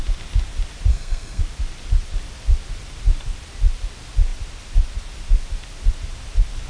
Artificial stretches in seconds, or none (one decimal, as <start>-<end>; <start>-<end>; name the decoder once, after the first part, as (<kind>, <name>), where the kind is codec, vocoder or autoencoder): 0.9-1.4 (codec, SNAC)